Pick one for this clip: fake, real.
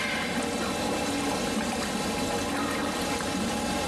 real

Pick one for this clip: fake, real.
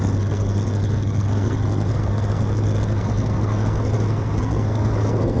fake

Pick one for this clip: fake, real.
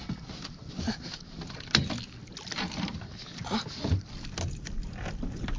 real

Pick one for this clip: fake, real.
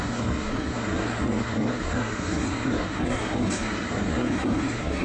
fake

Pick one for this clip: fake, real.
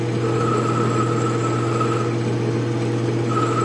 real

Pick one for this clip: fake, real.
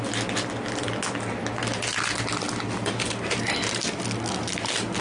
real